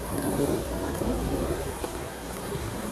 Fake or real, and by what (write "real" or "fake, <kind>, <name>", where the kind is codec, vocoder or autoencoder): fake, codec, SNAC